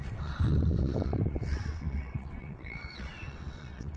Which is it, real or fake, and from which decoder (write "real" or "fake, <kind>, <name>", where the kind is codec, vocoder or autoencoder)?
fake, vocoder, WaveNeXt